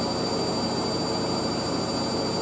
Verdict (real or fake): real